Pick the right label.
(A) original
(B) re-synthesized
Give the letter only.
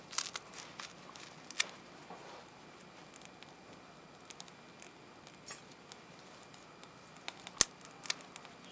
A